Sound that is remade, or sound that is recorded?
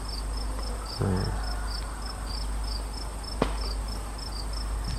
recorded